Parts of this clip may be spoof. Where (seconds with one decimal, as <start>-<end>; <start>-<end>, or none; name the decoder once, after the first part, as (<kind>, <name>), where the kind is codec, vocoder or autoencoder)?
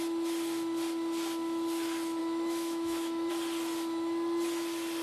2.2-3.3 (autoencoder, DAC-VAE)